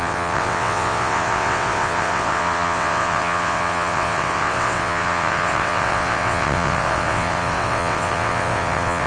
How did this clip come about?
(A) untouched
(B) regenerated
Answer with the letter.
B